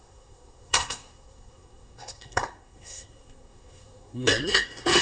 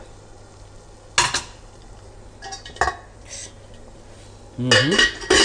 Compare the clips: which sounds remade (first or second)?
first